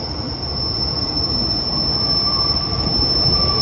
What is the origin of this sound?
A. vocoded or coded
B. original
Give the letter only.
B